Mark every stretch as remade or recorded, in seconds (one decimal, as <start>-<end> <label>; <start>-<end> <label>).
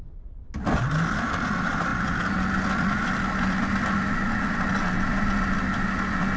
0.0-6.4 recorded